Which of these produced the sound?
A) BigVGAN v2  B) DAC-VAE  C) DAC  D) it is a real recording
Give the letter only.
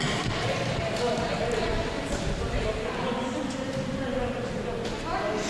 D